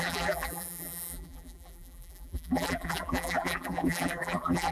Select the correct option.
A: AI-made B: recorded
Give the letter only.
A